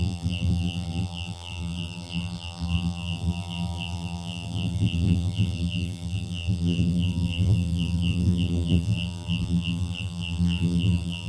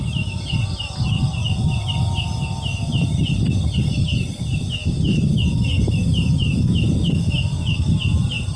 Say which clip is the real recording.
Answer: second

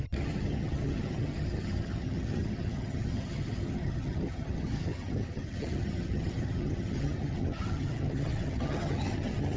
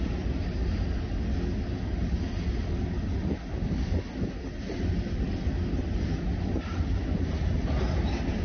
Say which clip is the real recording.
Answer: second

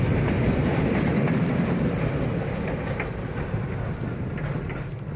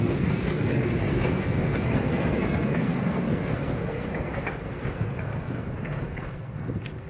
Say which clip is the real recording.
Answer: first